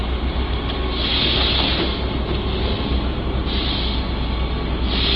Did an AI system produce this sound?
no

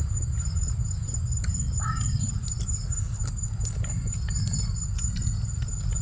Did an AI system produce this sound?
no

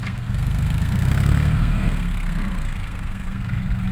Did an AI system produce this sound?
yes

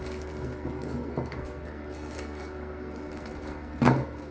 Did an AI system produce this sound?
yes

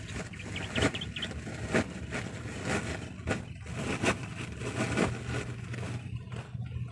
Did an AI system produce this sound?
no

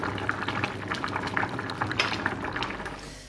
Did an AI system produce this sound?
no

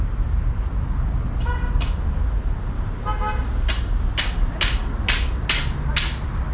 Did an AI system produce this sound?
no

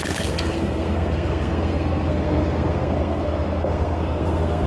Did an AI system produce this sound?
yes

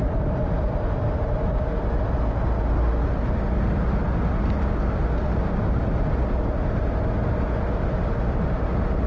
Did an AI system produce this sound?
no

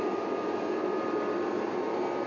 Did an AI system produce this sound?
no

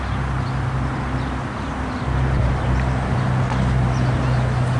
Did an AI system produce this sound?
no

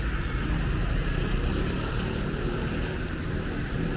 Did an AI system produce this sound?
no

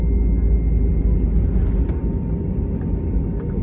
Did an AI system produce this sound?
no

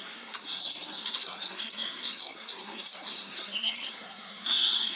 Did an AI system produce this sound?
yes